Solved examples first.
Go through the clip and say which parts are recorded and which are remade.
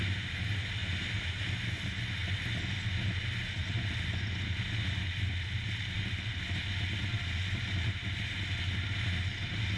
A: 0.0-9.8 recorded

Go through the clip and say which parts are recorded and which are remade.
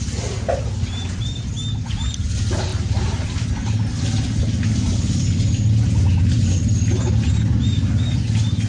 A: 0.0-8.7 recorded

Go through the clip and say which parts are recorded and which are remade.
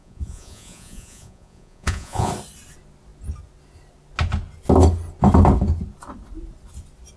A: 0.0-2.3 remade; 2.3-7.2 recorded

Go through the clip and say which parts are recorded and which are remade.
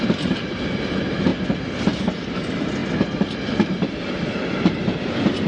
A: 0.0-5.5 recorded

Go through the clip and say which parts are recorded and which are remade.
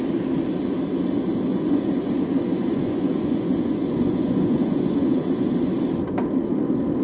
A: 0.0-1.5 recorded; 1.5-5.7 remade; 5.7-7.0 recorded